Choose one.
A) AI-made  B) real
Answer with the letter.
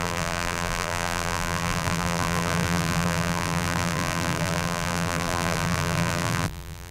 A